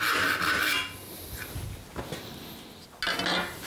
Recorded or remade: recorded